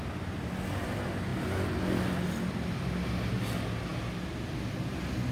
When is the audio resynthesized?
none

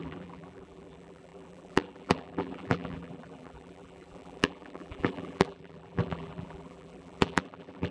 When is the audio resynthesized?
0.0-7.9

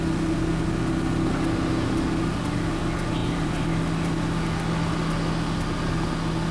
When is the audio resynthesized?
3.2-3.7

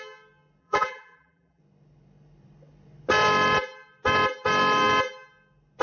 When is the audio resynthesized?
0.6-1.6

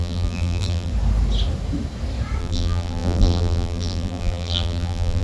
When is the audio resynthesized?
0.0-0.9; 2.4-5.2